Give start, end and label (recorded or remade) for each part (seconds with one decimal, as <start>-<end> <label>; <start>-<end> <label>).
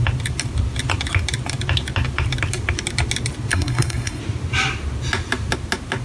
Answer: 0.0-3.5 recorded; 3.5-4.2 remade; 4.2-6.0 recorded